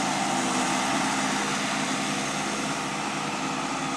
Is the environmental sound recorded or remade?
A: recorded